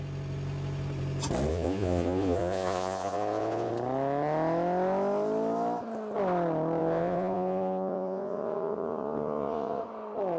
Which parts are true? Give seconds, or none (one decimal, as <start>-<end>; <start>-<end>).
0.0-1.5; 3.7-6.8; 9.8-10.4